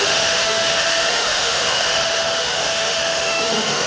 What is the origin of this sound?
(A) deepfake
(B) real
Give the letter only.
A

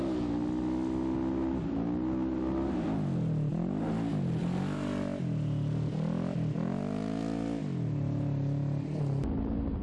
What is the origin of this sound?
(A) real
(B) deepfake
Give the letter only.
A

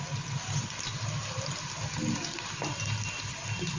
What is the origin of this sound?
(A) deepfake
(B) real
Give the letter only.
B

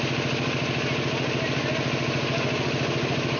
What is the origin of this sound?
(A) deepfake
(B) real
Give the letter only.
B